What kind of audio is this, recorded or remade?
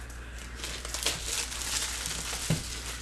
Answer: recorded